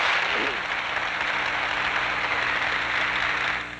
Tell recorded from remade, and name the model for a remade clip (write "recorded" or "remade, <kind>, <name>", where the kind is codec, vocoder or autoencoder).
recorded